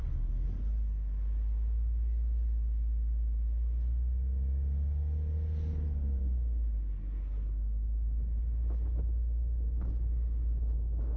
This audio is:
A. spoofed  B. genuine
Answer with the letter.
B